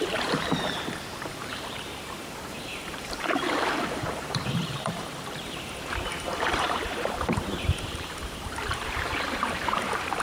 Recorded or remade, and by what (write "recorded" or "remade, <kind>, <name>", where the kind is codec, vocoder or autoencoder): remade, vocoder, BigVGAN v2